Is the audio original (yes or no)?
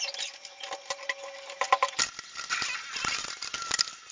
yes